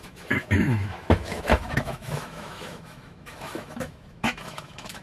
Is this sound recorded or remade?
remade